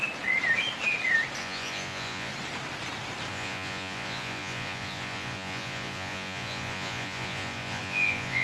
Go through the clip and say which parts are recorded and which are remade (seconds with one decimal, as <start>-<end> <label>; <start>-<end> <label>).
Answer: 0.0-1.4 recorded; 1.4-2.3 remade; 2.3-3.3 recorded; 3.3-8.4 remade